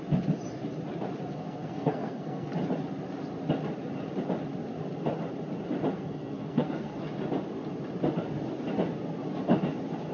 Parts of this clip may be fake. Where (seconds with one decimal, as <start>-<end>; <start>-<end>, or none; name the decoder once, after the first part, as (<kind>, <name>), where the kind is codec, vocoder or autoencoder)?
1.3-2.5 (codec, SNAC); 5.9-7.0